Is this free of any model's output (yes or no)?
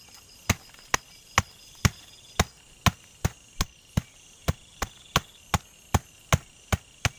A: yes